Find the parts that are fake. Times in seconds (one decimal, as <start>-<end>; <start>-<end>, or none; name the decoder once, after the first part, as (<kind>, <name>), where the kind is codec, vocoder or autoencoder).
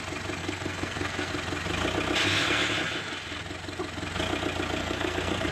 0.4-1.3 (codec, SNAC); 2.2-2.7; 4.8-5.5